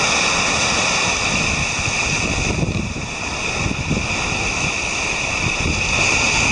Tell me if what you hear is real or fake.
real